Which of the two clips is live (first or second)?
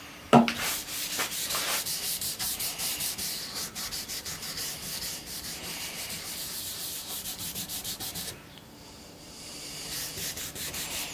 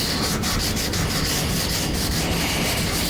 second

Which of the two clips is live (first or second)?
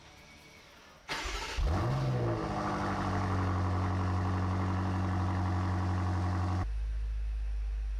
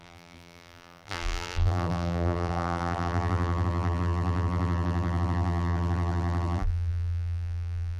first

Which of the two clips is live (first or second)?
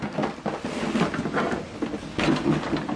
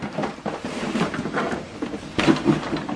first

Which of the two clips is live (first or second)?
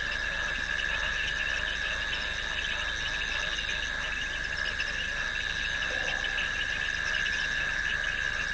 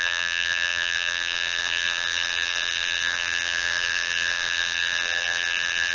first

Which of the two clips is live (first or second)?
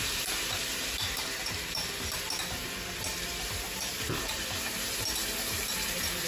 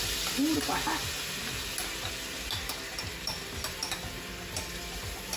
second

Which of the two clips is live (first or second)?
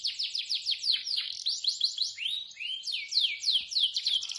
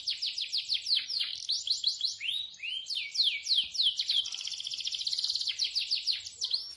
second